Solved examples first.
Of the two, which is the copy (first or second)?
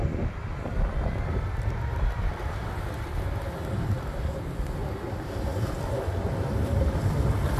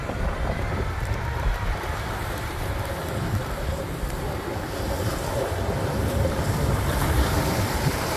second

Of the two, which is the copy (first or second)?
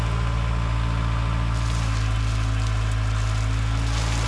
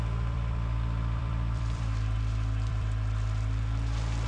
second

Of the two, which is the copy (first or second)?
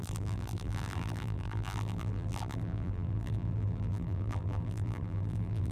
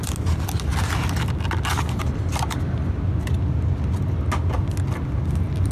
first